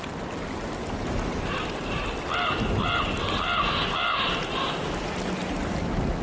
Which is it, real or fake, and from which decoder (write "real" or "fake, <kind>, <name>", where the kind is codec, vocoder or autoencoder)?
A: real